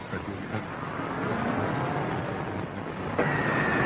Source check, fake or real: real